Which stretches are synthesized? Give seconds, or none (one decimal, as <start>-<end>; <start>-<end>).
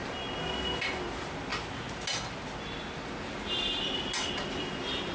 none